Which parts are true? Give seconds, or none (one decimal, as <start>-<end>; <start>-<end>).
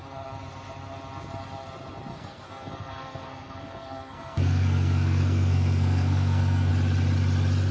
0.0-2.1; 6.7-7.7